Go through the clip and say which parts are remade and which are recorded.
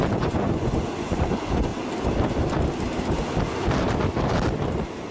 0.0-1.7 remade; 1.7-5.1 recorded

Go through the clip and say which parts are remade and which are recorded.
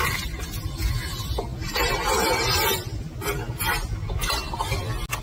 0.0-1.5 recorded; 1.5-2.5 remade; 2.5-5.2 recorded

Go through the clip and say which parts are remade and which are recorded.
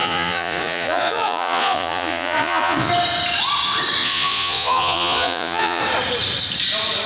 0.0-2.9 remade; 2.9-4.0 recorded; 4.0-5.8 remade; 5.8-7.1 recorded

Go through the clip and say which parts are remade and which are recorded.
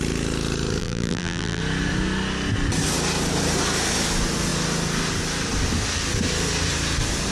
0.0-0.8 recorded; 0.8-1.6 remade; 1.6-7.3 recorded